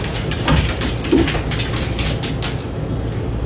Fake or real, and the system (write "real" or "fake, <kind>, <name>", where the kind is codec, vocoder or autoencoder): real